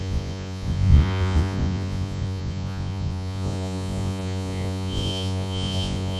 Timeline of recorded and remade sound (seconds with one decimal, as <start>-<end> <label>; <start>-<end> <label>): 0.0-6.2 remade